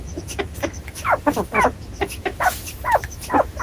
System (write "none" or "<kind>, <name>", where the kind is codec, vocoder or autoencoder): autoencoder, DAC-VAE